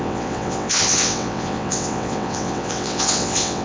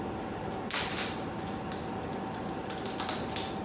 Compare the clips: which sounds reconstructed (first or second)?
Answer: first